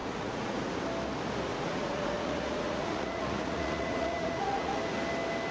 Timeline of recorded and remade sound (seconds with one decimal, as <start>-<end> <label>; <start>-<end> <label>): 0.0-0.8 remade; 0.8-1.5 recorded; 1.5-4.8 remade; 4.8-5.5 recorded